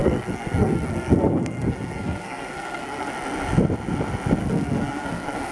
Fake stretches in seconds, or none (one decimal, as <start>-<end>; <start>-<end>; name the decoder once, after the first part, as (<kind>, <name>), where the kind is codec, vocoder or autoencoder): 0.0-3.1 (codec, SNAC); 4.4-5.5